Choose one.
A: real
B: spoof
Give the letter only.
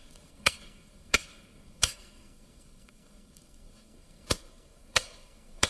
B